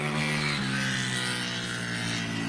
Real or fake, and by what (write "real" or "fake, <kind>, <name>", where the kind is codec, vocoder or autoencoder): real